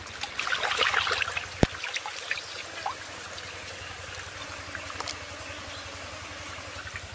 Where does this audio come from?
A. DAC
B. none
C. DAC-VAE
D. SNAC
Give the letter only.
B